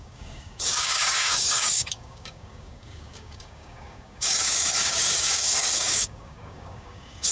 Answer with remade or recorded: remade